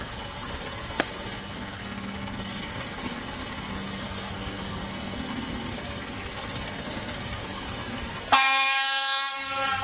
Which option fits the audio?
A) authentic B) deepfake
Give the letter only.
B